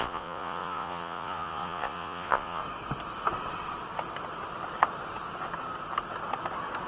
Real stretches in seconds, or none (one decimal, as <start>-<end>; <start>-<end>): 2.6-6.9